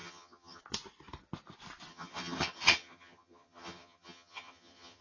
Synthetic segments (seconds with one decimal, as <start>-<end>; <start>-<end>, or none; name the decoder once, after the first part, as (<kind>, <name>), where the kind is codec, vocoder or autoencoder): 0.0-0.6 (vocoder, HiFi-GAN); 1.9-5.0